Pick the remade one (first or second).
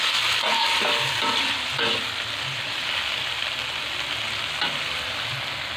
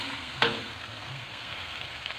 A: second